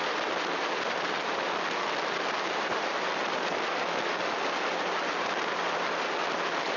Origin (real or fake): real